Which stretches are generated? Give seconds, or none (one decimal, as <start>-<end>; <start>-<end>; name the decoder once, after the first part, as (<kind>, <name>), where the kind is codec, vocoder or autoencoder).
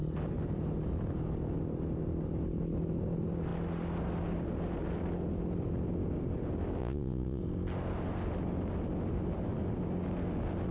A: 6.8-7.4 (vocoder, Vocos)